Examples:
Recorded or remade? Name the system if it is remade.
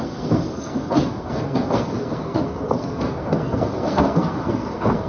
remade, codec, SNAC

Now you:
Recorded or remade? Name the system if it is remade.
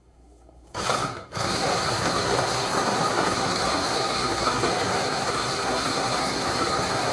remade, codec, SNAC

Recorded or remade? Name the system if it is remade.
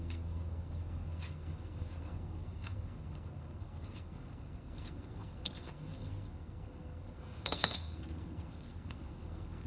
remade, codec, SNAC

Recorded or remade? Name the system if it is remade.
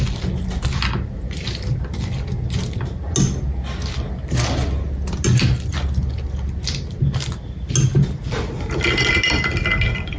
recorded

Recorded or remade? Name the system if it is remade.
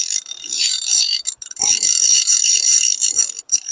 remade, vocoder, BigVGAN v2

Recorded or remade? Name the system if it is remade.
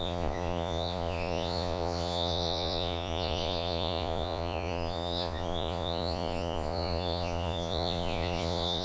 remade, vocoder, Vocos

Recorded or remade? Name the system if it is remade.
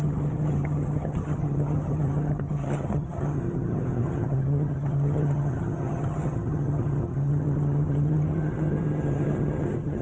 remade, vocoder, HiFi-GAN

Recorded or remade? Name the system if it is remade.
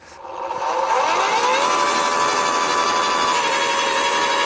recorded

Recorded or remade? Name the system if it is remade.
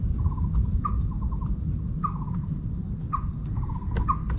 recorded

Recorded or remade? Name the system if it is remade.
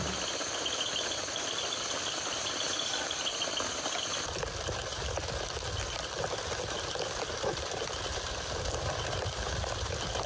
remade, vocoder, BigVGAN v2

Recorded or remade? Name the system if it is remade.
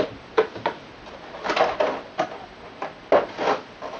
recorded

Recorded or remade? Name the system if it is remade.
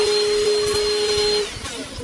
recorded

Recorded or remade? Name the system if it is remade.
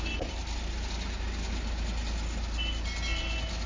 recorded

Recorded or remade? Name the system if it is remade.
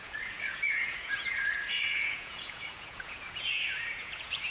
remade, vocoder, Vocos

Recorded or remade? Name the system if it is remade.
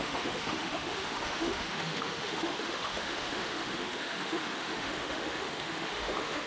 remade, autoencoder, DAC-VAE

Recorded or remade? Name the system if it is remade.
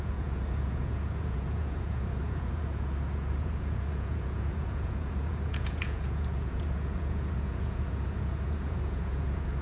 remade, vocoder, Vocos